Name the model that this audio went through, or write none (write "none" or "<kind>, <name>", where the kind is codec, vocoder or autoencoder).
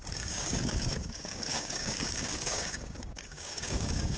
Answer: codec, DAC